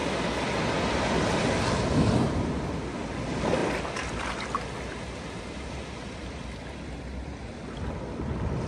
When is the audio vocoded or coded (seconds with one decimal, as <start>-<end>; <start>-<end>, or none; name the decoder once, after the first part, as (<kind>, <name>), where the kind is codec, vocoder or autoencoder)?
none

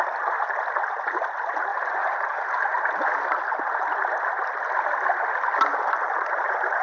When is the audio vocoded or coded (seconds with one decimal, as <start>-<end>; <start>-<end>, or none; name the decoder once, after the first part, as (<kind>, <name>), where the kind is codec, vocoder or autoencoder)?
1.7-2.5 (vocoder, BigVGAN v2); 5.7-6.8

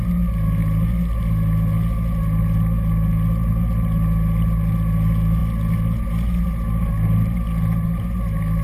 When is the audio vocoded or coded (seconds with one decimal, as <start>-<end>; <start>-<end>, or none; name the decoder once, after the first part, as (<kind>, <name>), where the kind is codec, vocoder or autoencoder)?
none

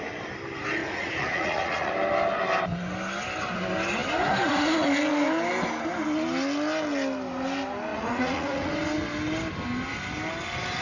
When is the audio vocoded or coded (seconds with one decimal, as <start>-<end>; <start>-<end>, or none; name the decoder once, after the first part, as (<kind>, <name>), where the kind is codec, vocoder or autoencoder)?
0.8-1.9 (vocoder, Vocos); 7.9-8.7

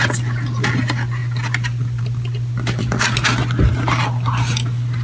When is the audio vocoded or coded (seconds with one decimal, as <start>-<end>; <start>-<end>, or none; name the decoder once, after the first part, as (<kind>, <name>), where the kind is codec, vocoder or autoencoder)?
none